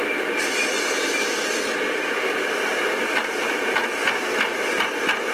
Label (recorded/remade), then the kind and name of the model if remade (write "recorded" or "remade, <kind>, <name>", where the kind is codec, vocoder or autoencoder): recorded